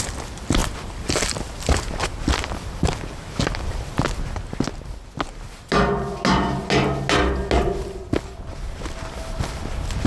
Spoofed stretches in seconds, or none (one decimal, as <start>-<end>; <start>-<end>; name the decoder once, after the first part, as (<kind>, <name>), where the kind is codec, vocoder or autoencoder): 0.6-2.9 (vocoder, BigVGAN v2)